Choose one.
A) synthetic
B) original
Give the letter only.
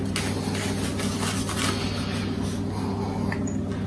B